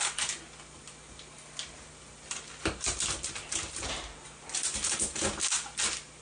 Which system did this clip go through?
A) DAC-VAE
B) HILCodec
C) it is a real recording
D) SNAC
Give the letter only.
C